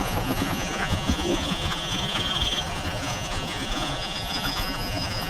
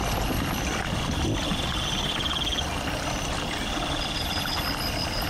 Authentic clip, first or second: second